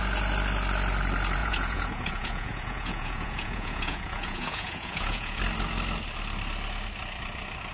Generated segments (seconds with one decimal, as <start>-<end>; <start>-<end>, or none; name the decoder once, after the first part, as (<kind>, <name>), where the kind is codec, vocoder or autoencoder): 1.4-5.4 (vocoder, Vocos)